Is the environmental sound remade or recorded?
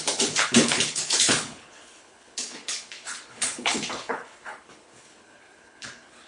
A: remade